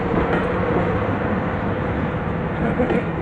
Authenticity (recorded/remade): recorded